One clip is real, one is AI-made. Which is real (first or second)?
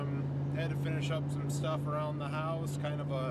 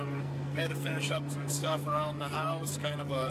first